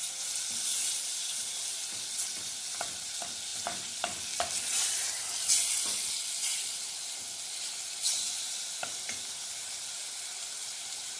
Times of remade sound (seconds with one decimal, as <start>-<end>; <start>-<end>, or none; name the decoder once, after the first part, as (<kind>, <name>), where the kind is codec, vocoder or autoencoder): none